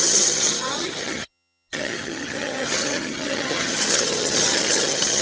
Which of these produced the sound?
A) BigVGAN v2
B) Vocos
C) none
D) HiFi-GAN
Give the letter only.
D